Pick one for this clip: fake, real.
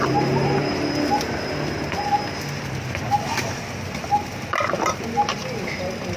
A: real